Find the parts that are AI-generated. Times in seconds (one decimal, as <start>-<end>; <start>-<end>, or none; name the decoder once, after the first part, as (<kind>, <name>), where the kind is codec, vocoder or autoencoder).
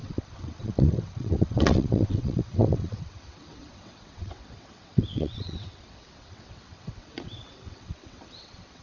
0.0-8.8 (vocoder, WaveNeXt)